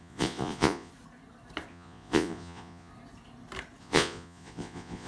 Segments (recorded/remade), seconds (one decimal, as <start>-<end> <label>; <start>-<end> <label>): 0.0-0.9 remade; 0.9-1.7 recorded; 1.7-2.9 remade; 2.9-3.8 recorded; 3.8-5.1 remade